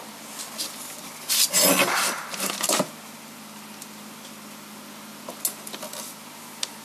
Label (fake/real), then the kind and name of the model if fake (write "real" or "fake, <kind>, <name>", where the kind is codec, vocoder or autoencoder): real